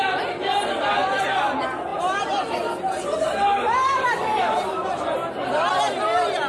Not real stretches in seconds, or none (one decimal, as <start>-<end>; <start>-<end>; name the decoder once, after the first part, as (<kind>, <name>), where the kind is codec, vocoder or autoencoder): 1.9-5.8 (vocoder, BigVGAN v2)